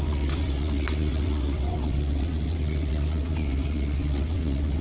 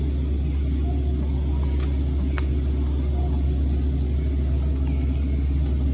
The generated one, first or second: first